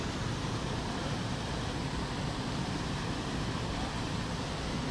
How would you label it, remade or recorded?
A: recorded